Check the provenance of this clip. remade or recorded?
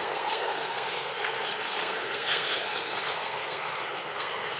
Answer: remade